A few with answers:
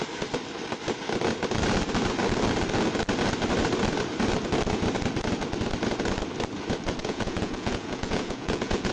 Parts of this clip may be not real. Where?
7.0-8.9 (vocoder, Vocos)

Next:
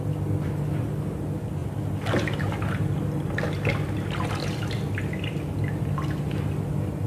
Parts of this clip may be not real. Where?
none

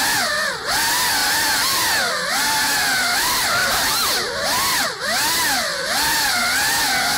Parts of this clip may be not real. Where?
1.2-1.9 (vocoder, BigVGAN v2); 3.6-5.0; 5.7-6.3

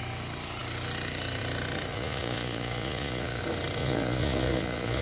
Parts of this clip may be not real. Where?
1.9-3.4 (vocoder, Vocos); 3.8-5.0

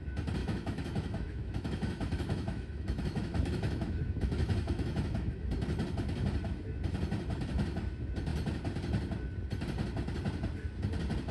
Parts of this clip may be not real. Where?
0.4-5.5 (autoencoder, DAC-VAE)

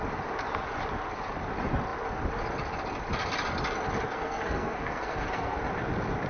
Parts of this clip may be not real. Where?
4.1-5.6 (codec, SNAC)

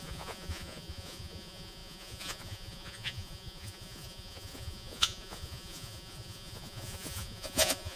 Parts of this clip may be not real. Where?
0.0-8.0 (vocoder, Vocos)

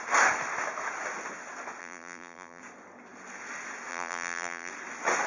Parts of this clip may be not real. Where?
1.8-2.6 (vocoder, BigVGAN v2); 3.9-4.7